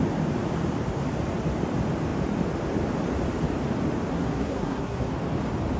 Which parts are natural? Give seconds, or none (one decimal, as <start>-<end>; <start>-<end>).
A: 0.0-4.1; 5.1-5.8

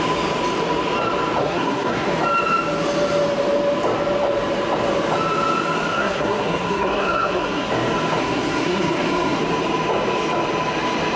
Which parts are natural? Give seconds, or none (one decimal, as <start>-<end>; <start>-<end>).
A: 0.0-1.4; 2.1-5.9; 7.7-8.2; 9.4-11.2

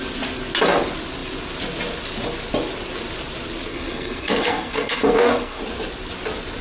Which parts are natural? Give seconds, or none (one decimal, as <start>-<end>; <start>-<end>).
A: 0.0-3.7; 5.6-6.6